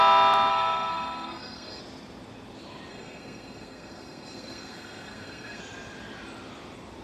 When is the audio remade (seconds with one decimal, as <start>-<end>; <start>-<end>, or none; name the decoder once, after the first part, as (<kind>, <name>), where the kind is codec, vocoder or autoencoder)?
0.5-1.8 (codec, SNAC); 2.9-5.6